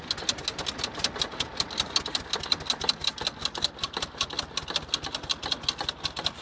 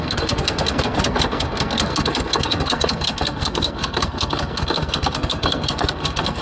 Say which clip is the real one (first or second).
first